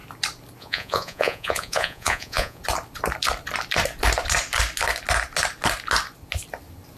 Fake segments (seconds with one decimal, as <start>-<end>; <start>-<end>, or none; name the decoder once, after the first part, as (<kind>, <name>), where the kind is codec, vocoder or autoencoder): 0.6-2.6 (vocoder, Vocos)